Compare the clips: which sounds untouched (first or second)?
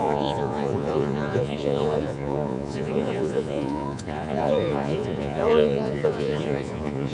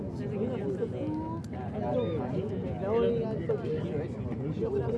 second